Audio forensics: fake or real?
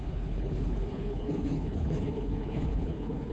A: fake